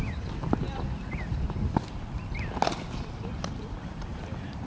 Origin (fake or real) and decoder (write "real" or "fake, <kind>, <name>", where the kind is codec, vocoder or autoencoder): real